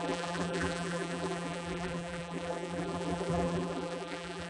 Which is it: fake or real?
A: fake